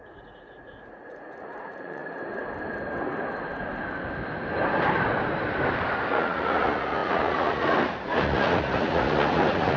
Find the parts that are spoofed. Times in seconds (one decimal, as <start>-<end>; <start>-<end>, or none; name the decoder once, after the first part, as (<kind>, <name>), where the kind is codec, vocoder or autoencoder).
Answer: 0.0-2.0 (vocoder, Vocos); 6.1-9.8

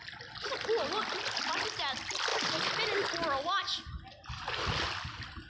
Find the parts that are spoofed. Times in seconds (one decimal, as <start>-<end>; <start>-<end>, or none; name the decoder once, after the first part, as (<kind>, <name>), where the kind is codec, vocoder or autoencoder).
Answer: none

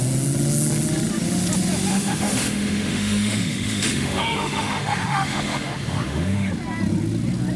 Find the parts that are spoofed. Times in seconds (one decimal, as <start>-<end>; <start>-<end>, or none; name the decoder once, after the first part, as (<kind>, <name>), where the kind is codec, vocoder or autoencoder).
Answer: 1.9-6.5 (autoencoder, DAC-VAE)

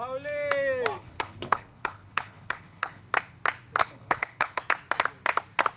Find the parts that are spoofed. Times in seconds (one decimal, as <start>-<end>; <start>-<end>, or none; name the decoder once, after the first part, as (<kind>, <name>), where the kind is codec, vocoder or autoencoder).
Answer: 1.0-3.0 (codec, HILCodec); 3.8-4.6